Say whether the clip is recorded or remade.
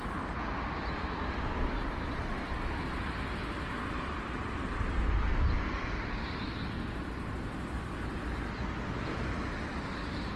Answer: recorded